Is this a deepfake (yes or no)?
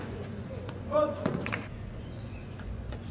yes